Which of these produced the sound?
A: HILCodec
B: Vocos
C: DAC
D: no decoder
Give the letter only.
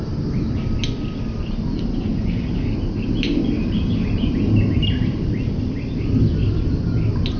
D